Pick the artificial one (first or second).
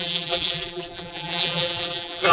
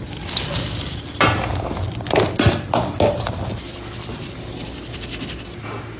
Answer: first